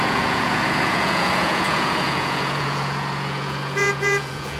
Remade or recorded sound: remade